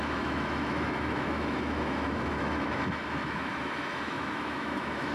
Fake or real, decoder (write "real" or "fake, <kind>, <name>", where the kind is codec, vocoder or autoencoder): fake, autoencoder, DAC-VAE